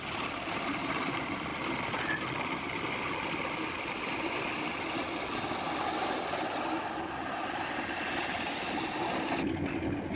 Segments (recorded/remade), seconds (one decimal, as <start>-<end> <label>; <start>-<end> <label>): 0.0-10.2 recorded